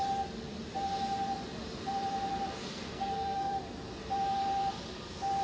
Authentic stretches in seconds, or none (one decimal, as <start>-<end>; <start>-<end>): 0.0-2.6; 3.5-5.4